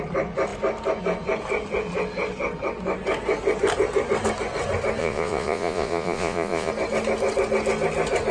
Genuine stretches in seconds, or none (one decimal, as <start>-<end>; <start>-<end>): 0.0-5.0; 6.7-8.3